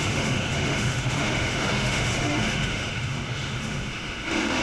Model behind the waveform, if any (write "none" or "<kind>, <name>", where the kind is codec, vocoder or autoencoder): autoencoder, DAC-VAE